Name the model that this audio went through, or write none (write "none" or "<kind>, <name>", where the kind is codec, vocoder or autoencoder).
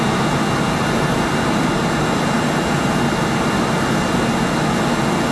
none